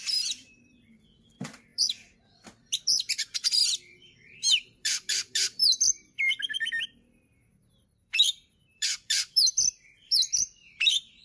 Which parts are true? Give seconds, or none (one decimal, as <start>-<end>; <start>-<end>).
none